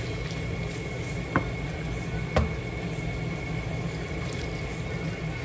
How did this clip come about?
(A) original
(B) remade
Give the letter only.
A